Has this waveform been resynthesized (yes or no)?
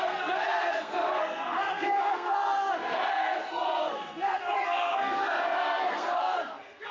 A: yes